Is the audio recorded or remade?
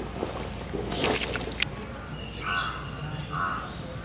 recorded